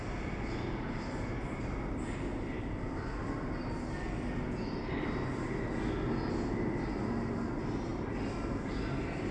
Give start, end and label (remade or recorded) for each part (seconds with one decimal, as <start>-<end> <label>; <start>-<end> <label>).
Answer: 0.0-9.3 recorded